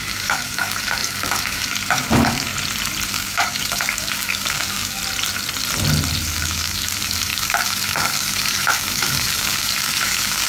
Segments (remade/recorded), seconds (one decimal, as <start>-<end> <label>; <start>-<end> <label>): 0.0-2.5 remade; 2.5-3.1 recorded; 3.1-5.0 remade; 5.0-6.3 recorded; 6.3-10.5 remade